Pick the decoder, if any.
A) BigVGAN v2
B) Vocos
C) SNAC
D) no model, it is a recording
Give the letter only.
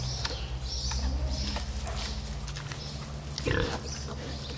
D